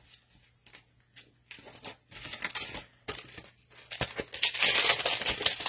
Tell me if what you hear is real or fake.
real